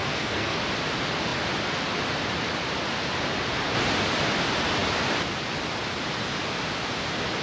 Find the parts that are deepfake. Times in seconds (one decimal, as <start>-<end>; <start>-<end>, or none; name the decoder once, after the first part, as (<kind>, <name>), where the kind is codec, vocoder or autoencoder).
0.0-0.6 (codec, SNAC)